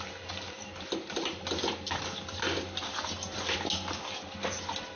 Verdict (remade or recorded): recorded